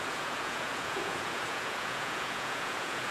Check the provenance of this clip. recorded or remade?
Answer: remade